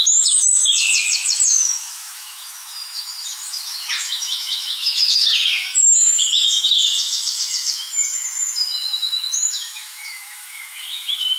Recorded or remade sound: remade